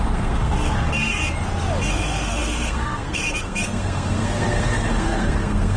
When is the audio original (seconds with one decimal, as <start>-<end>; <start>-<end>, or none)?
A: 1.2-1.9